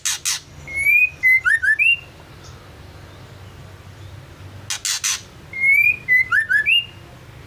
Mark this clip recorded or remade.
recorded